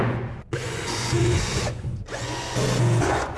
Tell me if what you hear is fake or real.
fake